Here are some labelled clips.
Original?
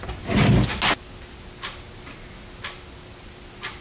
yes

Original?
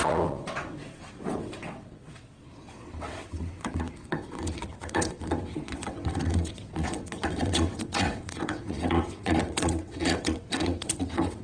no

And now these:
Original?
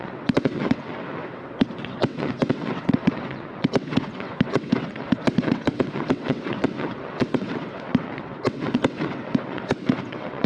no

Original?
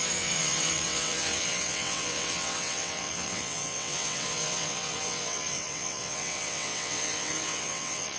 no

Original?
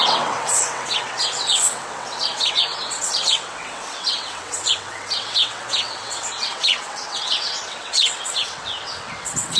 no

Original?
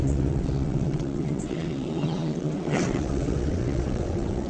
no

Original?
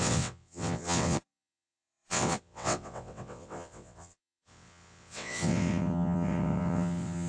no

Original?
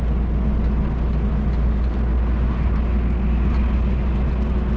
yes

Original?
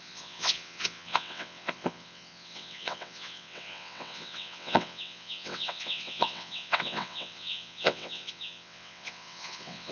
no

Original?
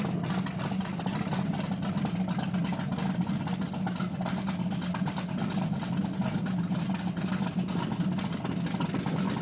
yes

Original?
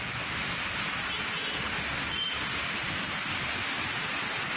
yes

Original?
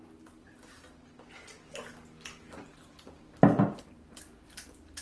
yes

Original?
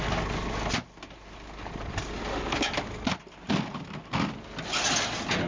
yes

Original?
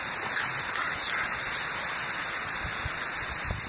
yes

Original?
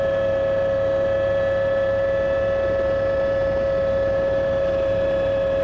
yes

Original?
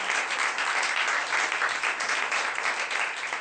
yes